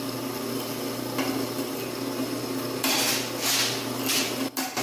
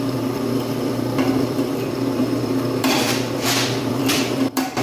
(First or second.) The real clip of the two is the first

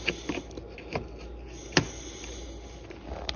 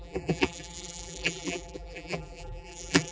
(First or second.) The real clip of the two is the first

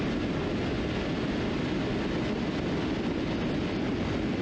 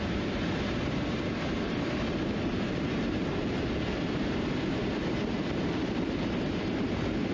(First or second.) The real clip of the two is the first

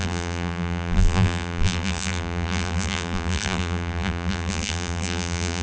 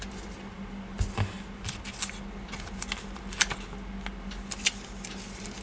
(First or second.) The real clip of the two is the second